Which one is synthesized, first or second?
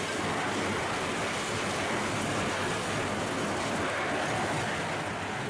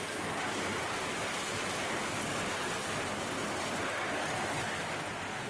second